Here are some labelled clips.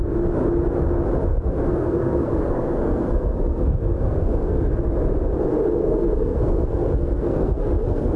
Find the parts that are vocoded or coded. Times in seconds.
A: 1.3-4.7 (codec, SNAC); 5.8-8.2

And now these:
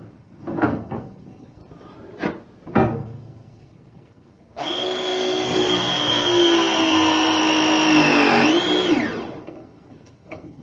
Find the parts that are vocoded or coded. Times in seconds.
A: 0.0-1.6 (codec, SNAC); 2.7-7.4; 9.4-10.6

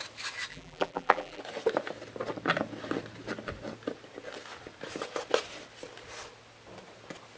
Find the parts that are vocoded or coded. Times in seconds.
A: 0.5-1.4 (vocoder, BigVGAN v2)

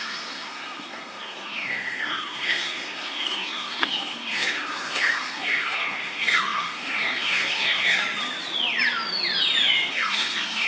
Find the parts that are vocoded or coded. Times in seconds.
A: 0.0-8.0 (codec, SNAC); 9.9-10.7

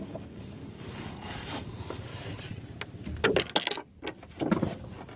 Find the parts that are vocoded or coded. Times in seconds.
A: 0.0-2.1 (codec, DAC)